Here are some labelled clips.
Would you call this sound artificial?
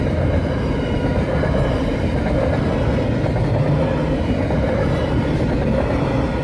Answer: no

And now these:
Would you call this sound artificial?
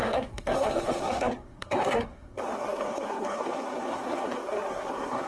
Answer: yes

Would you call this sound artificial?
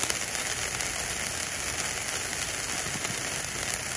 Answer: no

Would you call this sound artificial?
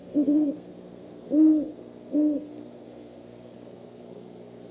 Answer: yes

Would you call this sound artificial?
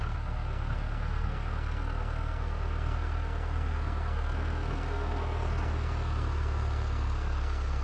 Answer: yes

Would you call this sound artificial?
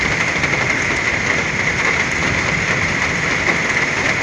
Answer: no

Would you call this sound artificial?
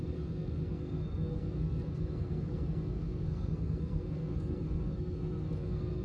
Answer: yes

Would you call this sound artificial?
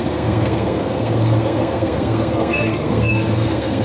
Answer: yes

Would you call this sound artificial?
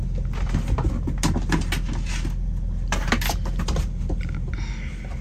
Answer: no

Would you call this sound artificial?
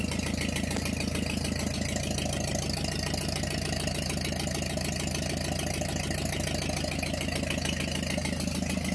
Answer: no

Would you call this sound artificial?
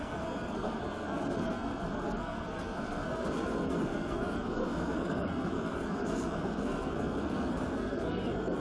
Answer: yes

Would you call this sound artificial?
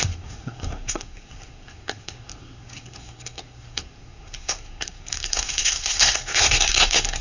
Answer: yes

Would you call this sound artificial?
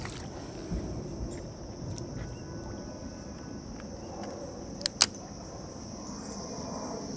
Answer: no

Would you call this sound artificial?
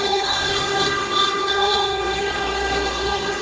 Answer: yes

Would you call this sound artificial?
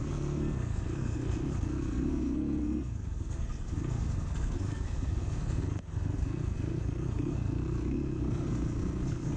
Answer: yes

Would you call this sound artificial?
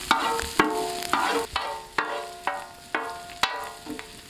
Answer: no